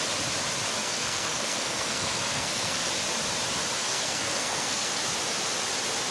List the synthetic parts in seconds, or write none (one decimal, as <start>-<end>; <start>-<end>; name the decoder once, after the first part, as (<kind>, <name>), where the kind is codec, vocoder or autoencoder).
0.8-2.9 (codec, SNAC); 3.8-5.0